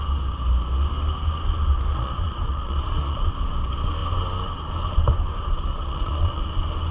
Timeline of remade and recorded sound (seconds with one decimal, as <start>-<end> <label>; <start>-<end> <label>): 0.0-1.9 recorded; 1.9-3.3 remade; 3.3-5.7 recorded; 5.7-6.4 remade; 6.4-6.9 recorded